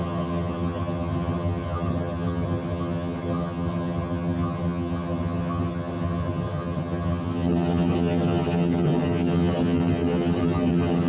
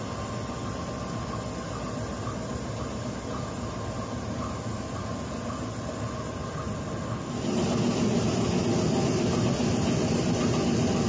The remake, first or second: first